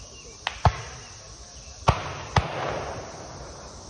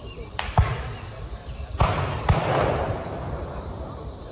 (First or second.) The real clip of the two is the first